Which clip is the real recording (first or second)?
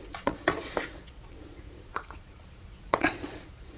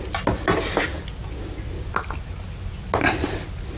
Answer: second